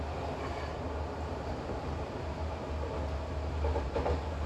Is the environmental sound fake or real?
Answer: real